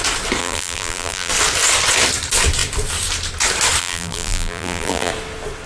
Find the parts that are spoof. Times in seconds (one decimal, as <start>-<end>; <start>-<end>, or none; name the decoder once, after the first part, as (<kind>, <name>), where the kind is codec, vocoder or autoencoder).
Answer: 0.4-1.3 (vocoder, BigVGAN v2); 3.8-5.1